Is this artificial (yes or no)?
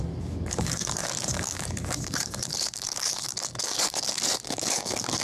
yes